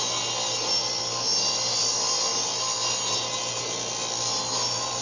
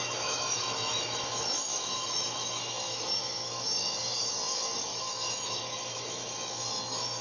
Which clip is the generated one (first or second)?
second